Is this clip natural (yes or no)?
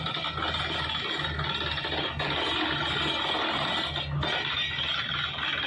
yes